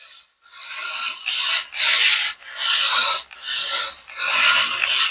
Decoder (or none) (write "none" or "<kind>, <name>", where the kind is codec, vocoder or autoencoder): vocoder, BigVGAN v2